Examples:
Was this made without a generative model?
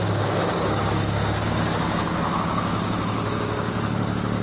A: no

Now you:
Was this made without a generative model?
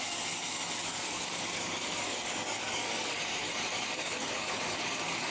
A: no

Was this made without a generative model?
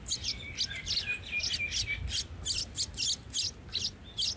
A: yes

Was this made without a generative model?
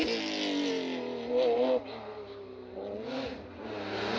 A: yes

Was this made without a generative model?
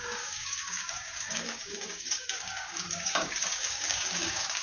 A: no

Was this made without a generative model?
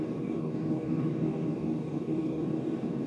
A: no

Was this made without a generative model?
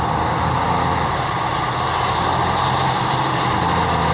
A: yes